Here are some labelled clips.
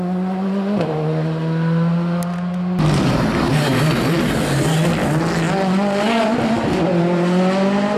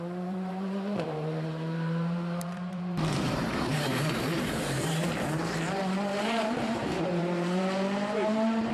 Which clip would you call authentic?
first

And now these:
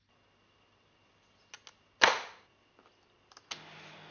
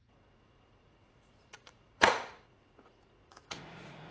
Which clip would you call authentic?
first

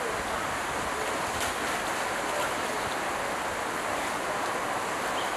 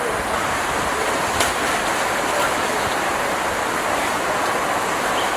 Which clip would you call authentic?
first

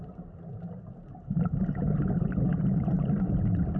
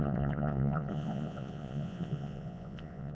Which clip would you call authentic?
first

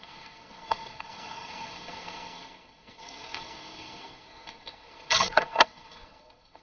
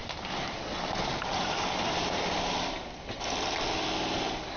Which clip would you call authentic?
second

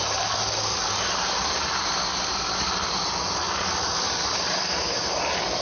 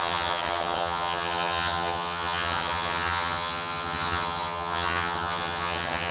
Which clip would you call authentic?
first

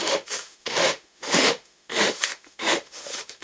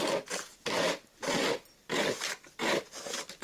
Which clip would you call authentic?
second